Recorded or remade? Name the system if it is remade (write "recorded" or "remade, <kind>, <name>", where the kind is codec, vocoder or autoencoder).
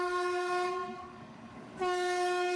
remade, codec, DAC